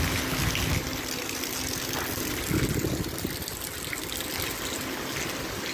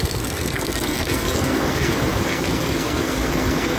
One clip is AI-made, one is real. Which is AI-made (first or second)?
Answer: second